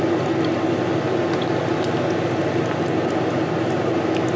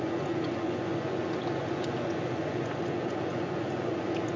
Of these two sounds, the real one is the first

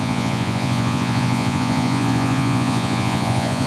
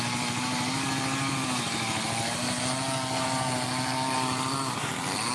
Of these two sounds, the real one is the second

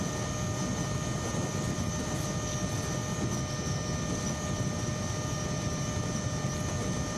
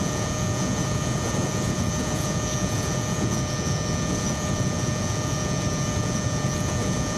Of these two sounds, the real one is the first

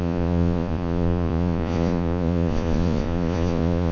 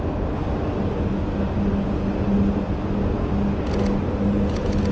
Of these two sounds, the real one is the second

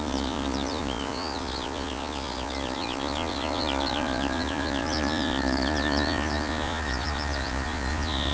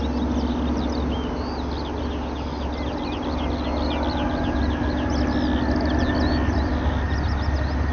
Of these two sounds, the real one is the second